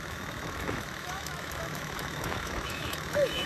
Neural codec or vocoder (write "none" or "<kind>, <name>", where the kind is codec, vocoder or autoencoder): autoencoder, DAC-VAE